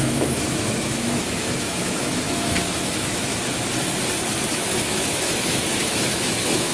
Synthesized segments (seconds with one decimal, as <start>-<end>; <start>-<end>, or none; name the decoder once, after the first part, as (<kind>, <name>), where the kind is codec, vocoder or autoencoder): 0.0-3.3 (autoencoder, DAC-VAE); 4.5-6.7